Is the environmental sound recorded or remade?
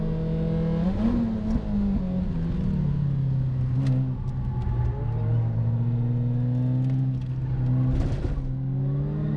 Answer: recorded